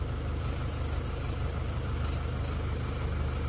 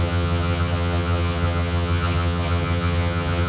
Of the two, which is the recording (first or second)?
first